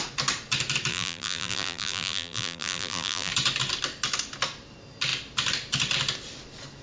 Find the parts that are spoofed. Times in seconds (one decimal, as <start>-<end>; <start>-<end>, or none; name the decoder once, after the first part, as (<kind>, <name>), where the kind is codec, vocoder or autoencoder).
0.9-3.3 (vocoder, BigVGAN v2)